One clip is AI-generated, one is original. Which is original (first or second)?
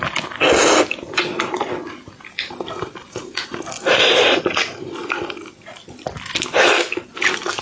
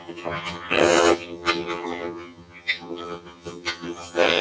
first